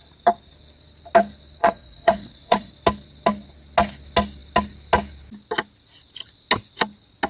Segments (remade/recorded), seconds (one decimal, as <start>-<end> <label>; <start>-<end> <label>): 0.0-1.6 recorded; 1.6-2.7 remade; 2.7-7.3 recorded